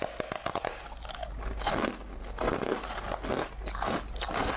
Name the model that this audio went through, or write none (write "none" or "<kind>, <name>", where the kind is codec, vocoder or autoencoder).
none